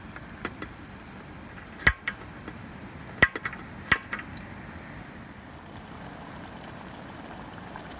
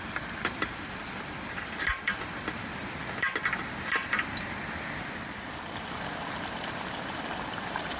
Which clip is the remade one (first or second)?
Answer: second